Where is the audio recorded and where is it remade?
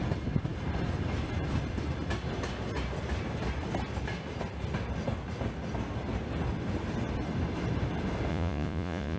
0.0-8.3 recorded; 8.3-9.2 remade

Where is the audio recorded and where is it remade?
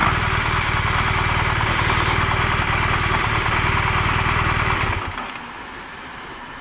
0.0-6.6 recorded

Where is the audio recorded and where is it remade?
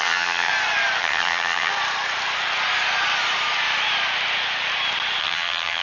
0.0-0.5 remade; 0.5-1.0 recorded; 1.0-1.7 remade; 1.7-5.2 recorded; 5.2-5.8 remade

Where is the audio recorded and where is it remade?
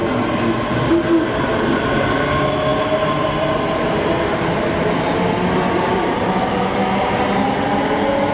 0.0-8.3 recorded